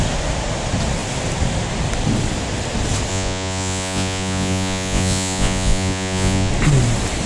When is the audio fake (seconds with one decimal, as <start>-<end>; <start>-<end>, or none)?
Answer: 3.1-6.5